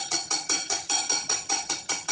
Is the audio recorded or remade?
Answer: remade